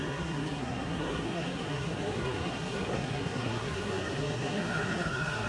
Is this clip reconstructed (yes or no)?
yes